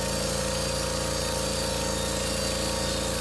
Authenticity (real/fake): real